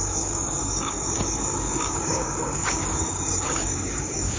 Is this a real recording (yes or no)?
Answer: no